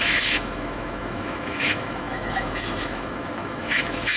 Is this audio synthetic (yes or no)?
yes